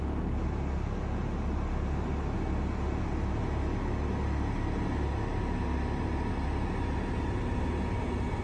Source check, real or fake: real